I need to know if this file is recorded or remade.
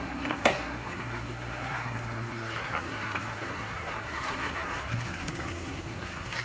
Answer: remade